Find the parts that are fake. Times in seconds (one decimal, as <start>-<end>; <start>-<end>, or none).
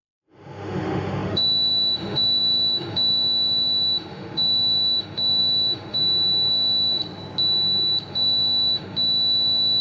0.0-6.0; 6.5-7.0; 8.1-9.8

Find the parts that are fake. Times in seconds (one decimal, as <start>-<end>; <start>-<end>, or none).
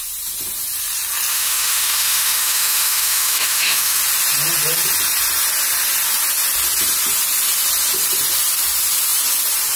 1.3-4.0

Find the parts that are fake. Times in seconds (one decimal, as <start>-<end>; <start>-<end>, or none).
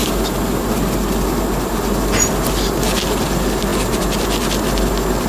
none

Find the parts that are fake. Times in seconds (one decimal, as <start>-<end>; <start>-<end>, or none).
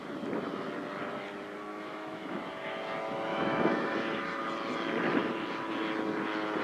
1.7-2.4; 3.3-4.4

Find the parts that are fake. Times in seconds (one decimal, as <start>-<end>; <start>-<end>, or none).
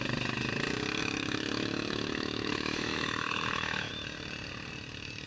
1.0-3.9